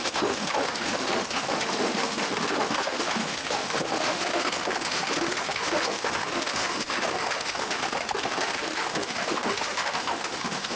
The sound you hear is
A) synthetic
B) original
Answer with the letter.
A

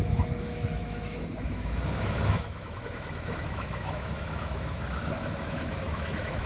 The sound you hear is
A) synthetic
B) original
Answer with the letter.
A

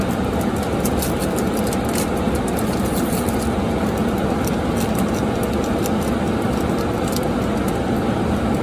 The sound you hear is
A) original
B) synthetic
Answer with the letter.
A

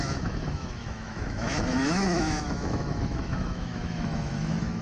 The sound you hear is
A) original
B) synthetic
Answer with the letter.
B